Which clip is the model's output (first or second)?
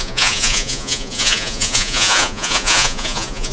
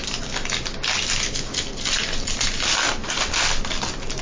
first